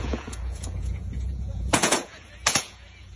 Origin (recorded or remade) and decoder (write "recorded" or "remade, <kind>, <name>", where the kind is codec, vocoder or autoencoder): remade, vocoder, Vocos